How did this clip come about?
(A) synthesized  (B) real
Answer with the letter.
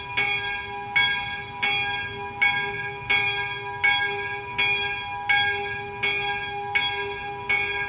B